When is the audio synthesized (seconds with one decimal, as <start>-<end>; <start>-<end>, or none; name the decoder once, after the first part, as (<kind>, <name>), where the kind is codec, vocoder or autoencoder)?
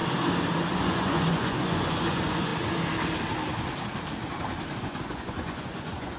0.8-2.5 (vocoder, Vocos); 4.8-6.2